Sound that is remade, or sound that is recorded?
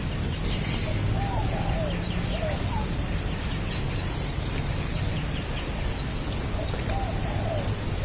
recorded